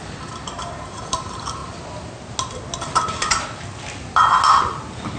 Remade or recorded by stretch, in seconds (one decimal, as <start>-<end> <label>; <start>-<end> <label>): 0.0-5.2 recorded